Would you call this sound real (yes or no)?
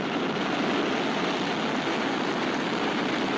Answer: yes